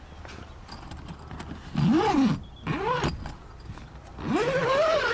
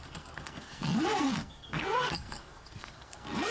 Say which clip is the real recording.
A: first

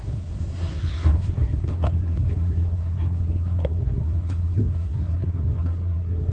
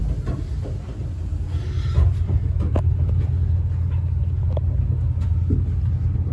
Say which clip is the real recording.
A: second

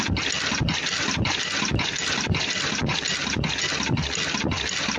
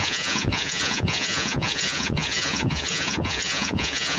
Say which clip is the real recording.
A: first